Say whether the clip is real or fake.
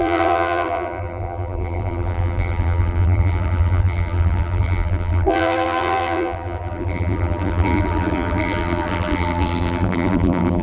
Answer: fake